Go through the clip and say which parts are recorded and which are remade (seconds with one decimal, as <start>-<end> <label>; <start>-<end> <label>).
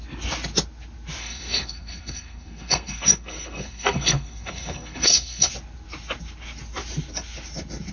0.0-1.2 recorded; 1.2-5.5 remade; 5.5-7.9 recorded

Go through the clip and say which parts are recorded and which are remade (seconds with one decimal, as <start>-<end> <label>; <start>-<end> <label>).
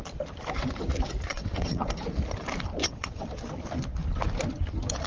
0.0-1.3 recorded; 1.3-1.9 remade; 1.9-2.8 recorded; 2.8-3.3 remade; 3.3-5.1 recorded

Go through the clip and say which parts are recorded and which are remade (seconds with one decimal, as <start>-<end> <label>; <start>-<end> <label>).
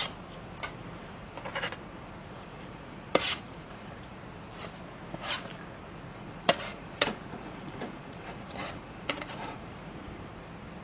0.0-2.2 recorded; 2.2-4.2 remade; 4.2-6.1 recorded; 6.1-9.9 remade; 9.9-10.8 recorded